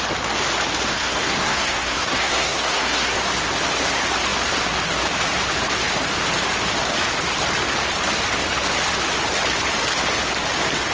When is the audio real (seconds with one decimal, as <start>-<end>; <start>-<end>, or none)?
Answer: 0.0-0.9; 3.2-10.9